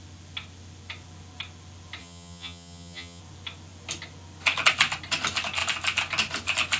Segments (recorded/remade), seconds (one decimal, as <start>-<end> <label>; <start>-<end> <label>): 0.0-2.0 recorded; 2.0-3.2 remade; 3.2-6.8 recorded